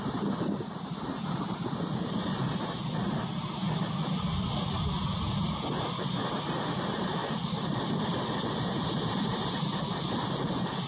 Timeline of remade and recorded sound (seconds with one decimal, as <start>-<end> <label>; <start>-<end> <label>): 0.0-7.2 recorded; 7.2-7.9 remade; 7.9-10.9 recorded